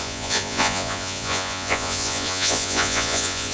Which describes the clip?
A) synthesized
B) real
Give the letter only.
A